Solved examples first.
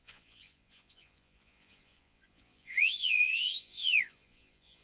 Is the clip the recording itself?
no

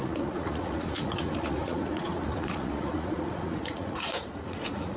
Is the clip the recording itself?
no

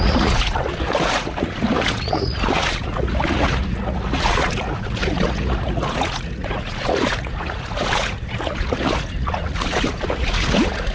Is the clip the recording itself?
no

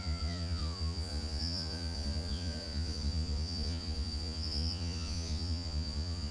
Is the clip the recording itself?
no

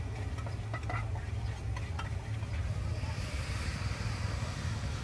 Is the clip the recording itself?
yes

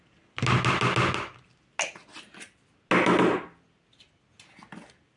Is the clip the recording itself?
yes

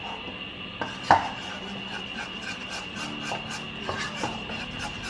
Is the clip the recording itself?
yes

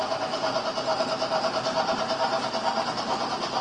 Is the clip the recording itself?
yes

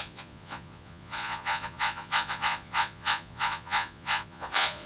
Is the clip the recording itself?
no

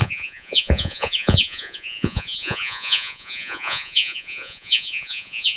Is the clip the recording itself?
no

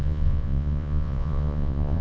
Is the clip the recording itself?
no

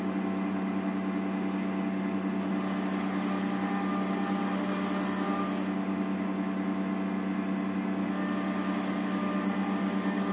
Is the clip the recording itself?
yes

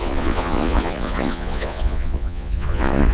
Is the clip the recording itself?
no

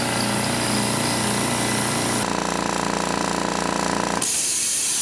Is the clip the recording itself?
yes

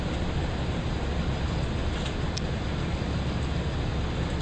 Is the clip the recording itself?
yes